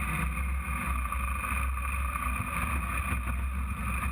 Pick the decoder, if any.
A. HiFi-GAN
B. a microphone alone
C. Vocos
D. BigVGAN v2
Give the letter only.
B